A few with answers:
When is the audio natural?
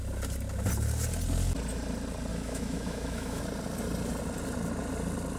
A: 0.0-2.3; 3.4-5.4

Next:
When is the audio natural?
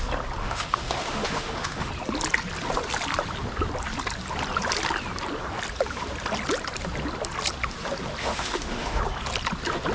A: 0.0-0.4; 1.9-8.2; 9.0-9.9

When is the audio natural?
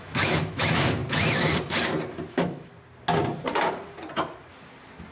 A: 1.0-2.3; 2.7-5.1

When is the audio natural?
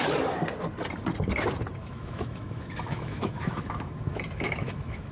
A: 0.0-1.8